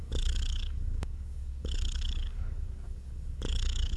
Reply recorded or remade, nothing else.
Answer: remade